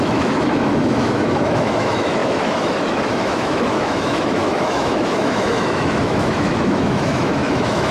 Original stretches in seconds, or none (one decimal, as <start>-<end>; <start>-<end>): none